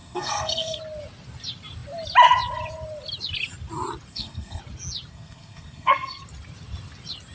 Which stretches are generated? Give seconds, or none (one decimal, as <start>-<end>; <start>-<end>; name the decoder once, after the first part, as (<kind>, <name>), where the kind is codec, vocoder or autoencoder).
0.0-0.8 (codec, SNAC); 4.1-4.6; 5.1-6.2